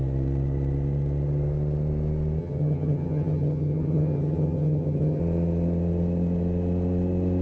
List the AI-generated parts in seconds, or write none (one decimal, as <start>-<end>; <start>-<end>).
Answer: 2.4-5.2